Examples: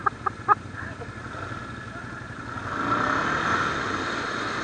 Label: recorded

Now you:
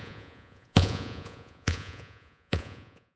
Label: remade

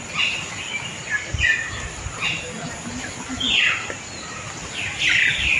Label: recorded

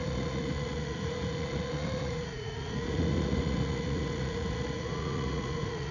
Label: remade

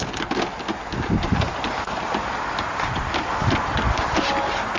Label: recorded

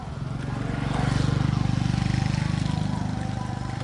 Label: recorded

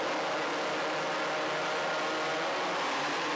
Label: recorded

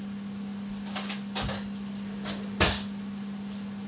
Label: recorded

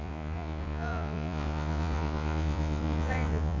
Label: remade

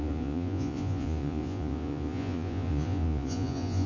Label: remade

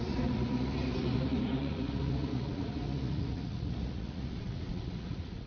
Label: remade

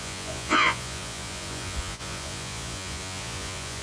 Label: remade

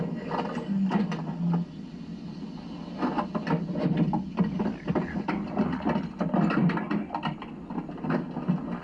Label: recorded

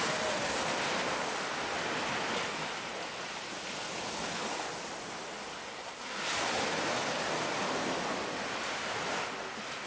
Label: recorded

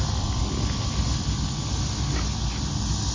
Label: recorded